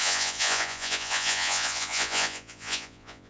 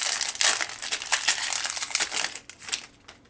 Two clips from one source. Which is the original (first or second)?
second